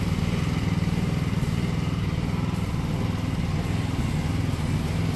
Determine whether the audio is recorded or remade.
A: recorded